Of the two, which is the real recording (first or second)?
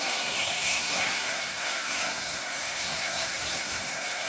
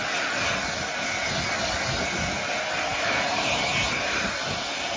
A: second